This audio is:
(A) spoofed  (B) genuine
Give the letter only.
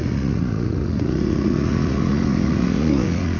A